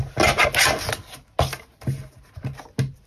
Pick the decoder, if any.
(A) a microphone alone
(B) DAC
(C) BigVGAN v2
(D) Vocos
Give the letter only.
A